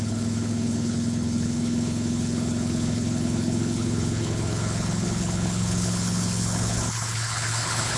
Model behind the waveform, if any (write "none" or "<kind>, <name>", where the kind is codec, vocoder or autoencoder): codec, HILCodec